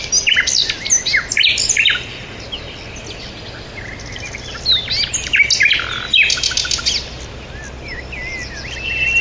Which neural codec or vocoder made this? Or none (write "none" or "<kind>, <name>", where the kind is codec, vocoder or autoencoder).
none